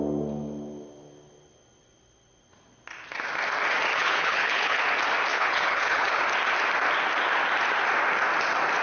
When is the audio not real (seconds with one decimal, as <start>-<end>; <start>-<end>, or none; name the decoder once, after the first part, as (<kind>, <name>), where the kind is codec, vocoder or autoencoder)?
3.9-4.8 (codec, HILCodec); 5.3-6.2